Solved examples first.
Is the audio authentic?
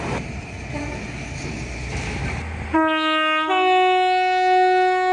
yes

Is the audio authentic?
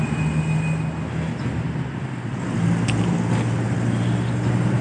yes